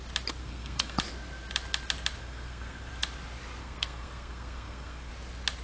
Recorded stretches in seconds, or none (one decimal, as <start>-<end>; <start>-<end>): 0.0-0.4; 1.0-2.2; 2.9-3.6; 5.1-5.6